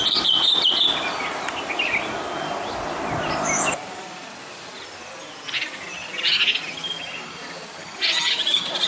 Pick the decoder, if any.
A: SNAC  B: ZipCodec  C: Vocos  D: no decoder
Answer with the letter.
D